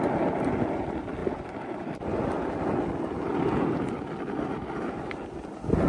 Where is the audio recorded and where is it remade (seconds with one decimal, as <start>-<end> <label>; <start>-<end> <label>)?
0.0-1.2 recorded; 1.2-2.8 remade; 2.8-5.9 recorded